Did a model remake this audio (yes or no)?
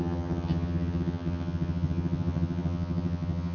yes